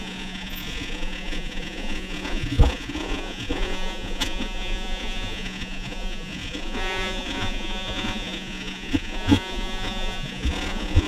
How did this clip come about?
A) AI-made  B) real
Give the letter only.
A